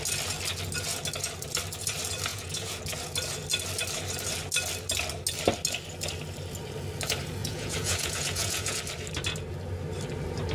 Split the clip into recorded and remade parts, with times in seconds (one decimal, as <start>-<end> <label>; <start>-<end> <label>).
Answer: 0.0-2.3 recorded; 2.3-2.8 remade; 2.8-7.4 recorded; 7.4-8.8 remade; 8.8-10.5 recorded

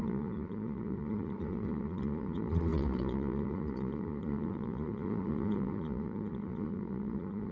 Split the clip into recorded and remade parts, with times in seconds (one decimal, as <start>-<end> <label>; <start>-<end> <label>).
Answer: 0.0-7.5 remade

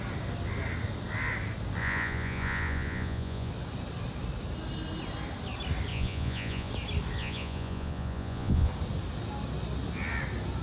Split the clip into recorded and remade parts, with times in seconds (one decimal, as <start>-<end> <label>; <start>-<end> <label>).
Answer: 0.0-1.8 recorded; 1.8-3.5 remade; 3.5-5.9 recorded; 5.9-6.7 remade; 6.7-7.2 recorded; 7.2-8.7 remade; 8.7-10.6 recorded

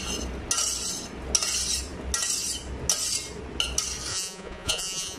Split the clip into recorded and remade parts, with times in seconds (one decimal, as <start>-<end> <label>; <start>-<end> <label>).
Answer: 0.0-4.1 recorded; 4.1-5.2 remade

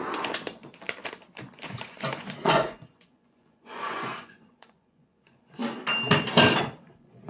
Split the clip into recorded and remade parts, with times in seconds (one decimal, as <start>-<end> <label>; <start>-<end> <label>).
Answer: 0.0-0.8 remade; 0.8-1.6 recorded; 1.6-5.6 remade; 5.6-6.6 recorded; 6.6-7.3 remade

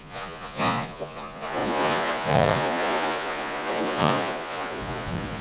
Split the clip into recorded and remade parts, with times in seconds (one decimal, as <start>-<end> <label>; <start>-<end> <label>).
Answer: 0.0-5.4 remade

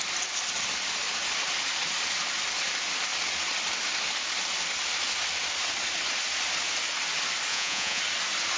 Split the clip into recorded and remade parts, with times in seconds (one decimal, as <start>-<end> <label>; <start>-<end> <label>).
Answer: 0.0-7.5 recorded; 7.5-8.0 remade; 8.0-8.6 recorded